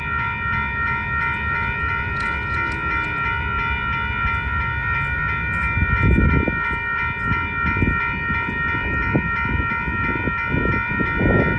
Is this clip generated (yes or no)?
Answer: no